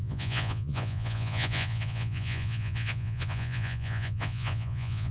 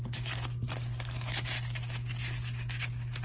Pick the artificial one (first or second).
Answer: first